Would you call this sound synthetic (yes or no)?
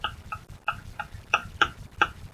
yes